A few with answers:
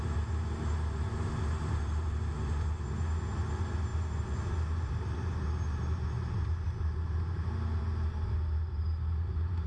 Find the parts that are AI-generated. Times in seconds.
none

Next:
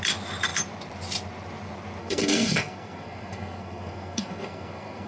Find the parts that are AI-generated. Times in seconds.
2.0-5.1 (codec, SNAC)